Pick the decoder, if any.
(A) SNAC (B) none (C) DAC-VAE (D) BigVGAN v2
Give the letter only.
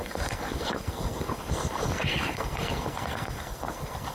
A